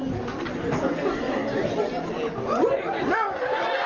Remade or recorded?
recorded